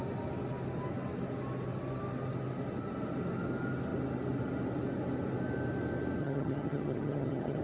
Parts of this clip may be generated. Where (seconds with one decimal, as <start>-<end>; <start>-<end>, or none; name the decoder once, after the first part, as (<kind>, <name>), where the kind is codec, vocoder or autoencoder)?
6.2-7.6 (vocoder, HiFi-GAN)